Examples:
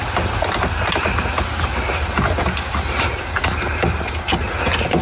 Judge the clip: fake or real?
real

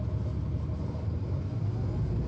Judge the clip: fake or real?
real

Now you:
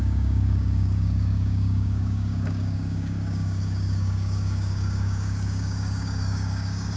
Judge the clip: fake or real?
fake